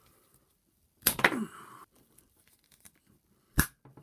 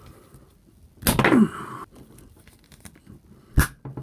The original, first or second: second